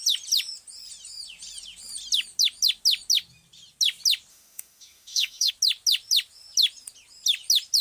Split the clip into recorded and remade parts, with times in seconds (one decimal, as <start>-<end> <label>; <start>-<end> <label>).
0.0-4.3 recorded; 4.3-5.5 remade; 5.5-7.8 recorded